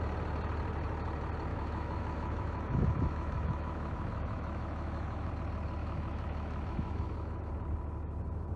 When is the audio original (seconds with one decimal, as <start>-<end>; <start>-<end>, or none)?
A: 0.0-1.5; 5.3-5.8; 7.5-8.6